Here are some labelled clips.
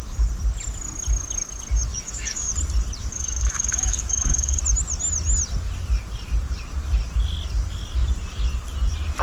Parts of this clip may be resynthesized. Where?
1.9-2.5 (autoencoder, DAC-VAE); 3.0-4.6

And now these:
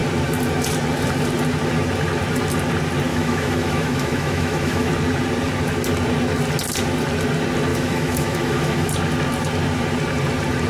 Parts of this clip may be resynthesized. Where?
3.1-4.9 (autoencoder, DAC-VAE); 7.7-8.9

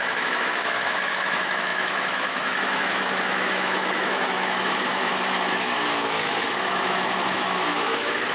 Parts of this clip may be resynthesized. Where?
0.0-8.3 (autoencoder, DAC-VAE)

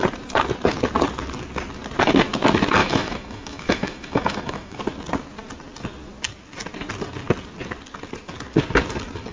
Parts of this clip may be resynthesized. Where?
2.8-4.8 (autoencoder, DAC-VAE)

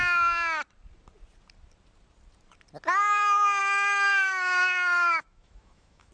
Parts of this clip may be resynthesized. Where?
3.6-6.1 (autoencoder, DAC-VAE)

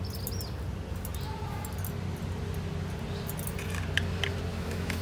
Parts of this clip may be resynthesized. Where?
4.5-5.0 (autoencoder, DAC-VAE)